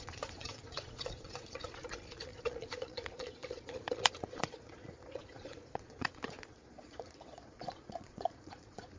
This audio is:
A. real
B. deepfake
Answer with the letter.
B